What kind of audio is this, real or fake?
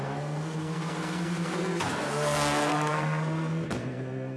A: fake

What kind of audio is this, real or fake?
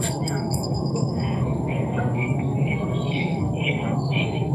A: fake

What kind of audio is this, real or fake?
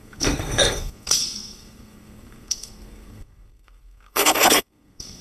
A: fake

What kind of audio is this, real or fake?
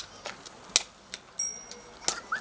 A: real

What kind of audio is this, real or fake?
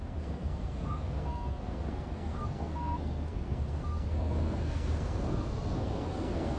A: fake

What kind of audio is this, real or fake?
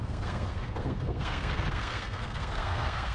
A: fake